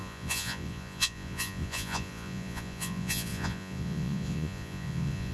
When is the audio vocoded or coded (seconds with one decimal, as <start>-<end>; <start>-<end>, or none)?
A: 0.0-5.3